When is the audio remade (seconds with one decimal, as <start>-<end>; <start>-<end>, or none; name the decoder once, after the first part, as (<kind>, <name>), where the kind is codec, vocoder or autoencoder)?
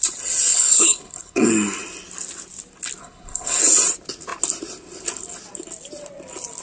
0.5-1.5 (codec, HILCodec); 3.0-3.6